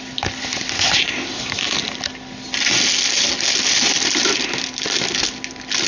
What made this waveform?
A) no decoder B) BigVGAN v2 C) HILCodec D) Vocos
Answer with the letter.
A